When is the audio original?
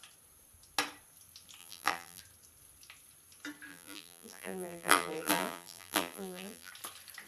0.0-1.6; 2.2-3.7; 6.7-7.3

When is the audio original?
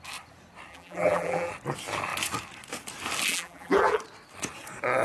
0.0-0.7; 1.5-3.3; 4.0-5.0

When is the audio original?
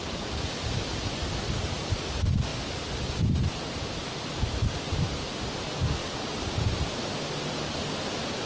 0.0-2.5; 3.7-6.0; 7.3-8.5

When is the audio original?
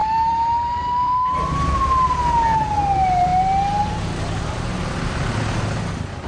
1.8-6.3